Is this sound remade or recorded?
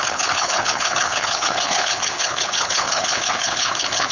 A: remade